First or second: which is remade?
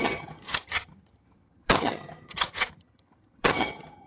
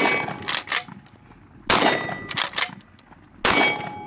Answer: first